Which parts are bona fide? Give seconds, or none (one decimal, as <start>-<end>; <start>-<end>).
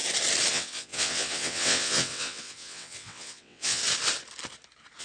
0.0-0.5; 3.8-5.0